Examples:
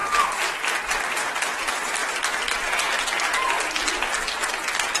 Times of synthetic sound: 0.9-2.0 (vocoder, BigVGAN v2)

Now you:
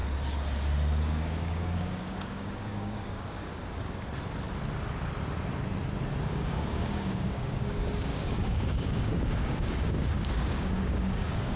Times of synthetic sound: 1.0-3.6 (codec, DAC); 6.3-11.6

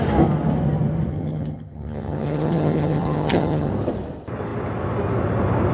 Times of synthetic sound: 1.1-3.7 (vocoder, HiFi-GAN)